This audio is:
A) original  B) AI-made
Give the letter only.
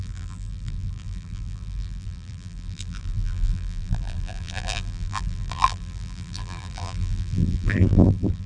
B